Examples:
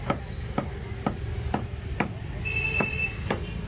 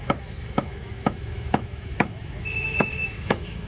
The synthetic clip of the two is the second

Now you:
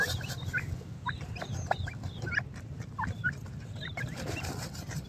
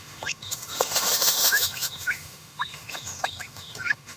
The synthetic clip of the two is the second